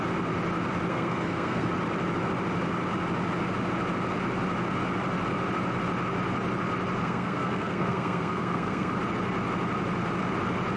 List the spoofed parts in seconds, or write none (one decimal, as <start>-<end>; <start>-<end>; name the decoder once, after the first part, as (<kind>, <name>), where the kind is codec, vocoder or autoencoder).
0.9-1.7 (codec, SNAC); 7.0-9.0

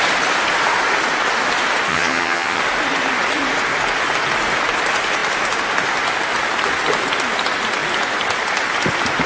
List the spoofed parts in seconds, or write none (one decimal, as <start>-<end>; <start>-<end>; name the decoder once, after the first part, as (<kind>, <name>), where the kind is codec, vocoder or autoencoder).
1.9-2.6 (vocoder, HiFi-GAN)